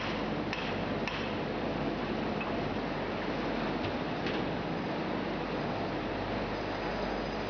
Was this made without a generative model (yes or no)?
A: yes